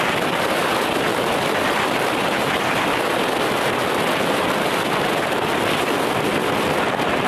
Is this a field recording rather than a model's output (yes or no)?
yes